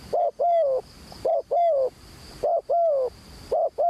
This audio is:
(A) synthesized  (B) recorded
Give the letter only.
B